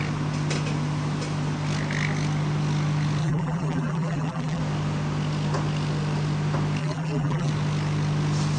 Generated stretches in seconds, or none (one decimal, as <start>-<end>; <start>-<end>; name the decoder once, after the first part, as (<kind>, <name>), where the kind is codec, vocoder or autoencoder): 3.2-4.6 (vocoder, BigVGAN v2); 6.8-7.5